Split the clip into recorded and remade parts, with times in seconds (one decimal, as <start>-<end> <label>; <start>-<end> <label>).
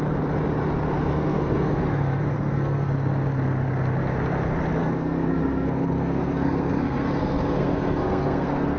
0.0-1.1 recorded; 1.1-2.9 remade; 2.9-4.8 recorded; 4.8-8.8 remade